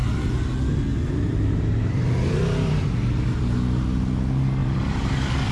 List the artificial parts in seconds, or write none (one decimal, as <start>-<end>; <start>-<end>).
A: 0.0-0.5; 0.9-4.1; 4.6-5.5